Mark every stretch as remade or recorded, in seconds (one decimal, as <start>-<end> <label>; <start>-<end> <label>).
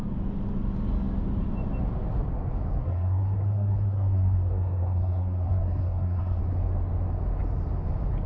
0.0-2.8 recorded; 2.8-6.4 remade; 6.4-8.3 recorded